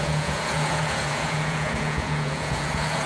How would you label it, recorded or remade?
remade